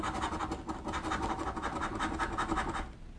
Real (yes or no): yes